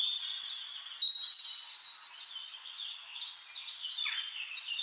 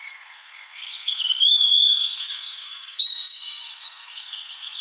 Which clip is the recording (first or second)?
first